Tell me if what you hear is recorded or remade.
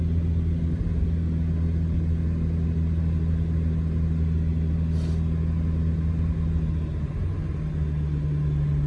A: recorded